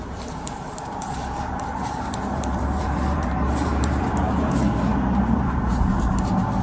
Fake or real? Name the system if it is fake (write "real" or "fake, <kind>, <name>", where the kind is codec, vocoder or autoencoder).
fake, vocoder, BigVGAN v2